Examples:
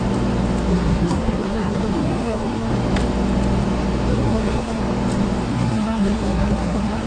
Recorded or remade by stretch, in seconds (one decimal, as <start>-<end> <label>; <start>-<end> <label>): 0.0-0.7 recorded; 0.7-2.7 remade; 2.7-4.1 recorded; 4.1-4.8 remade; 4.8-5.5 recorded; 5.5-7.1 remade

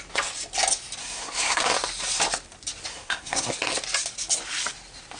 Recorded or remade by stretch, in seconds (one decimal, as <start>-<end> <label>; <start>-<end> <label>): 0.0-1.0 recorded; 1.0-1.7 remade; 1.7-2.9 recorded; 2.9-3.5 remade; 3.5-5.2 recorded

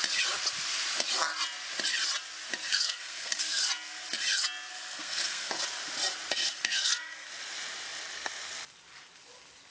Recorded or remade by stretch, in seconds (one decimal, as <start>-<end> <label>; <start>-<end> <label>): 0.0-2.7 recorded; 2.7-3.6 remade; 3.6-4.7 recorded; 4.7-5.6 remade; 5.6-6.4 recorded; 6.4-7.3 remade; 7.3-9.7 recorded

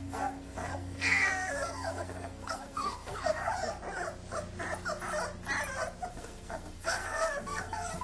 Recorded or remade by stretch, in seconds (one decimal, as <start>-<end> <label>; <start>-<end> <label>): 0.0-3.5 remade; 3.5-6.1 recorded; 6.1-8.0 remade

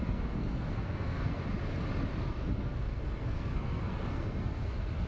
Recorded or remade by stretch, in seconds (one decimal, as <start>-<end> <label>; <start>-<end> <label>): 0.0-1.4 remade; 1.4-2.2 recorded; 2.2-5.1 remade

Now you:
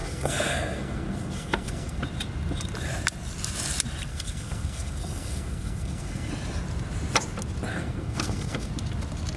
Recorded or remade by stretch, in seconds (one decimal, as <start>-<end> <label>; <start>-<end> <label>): 0.0-2.0 remade; 2.0-4.1 recorded; 4.1-6.3 remade; 6.3-7.7 recorded; 7.7-8.7 remade; 8.7-9.4 recorded

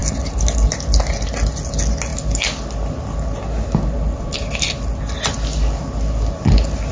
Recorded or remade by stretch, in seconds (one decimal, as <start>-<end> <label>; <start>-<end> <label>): 0.0-6.9 recorded